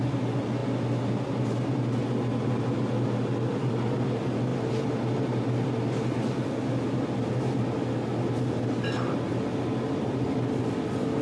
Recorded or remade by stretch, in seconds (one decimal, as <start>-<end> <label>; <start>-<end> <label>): 0.0-11.2 recorded